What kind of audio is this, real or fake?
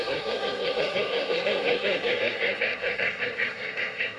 fake